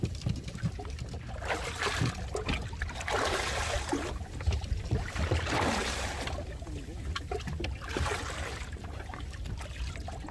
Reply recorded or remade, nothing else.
recorded